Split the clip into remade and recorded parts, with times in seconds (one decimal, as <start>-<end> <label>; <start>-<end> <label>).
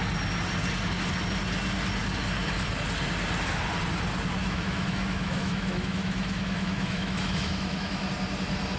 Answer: 0.0-4.4 recorded; 4.4-8.1 remade; 8.1-8.8 recorded